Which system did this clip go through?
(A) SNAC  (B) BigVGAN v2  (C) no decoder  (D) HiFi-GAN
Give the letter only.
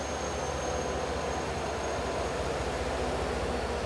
C